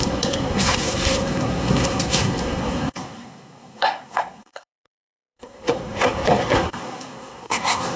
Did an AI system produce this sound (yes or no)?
yes